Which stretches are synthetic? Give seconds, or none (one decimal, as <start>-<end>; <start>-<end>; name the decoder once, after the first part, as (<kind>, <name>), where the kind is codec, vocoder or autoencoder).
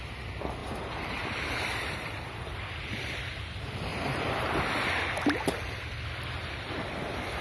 0.6-3.2 (vocoder, BigVGAN v2); 3.9-4.6; 6.4-7.4